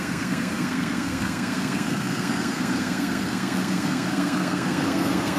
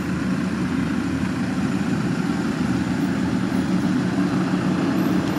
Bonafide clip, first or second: second